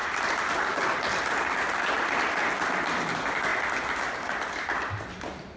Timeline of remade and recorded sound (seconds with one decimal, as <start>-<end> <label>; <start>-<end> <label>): 0.0-5.6 recorded